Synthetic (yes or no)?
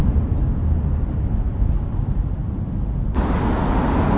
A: no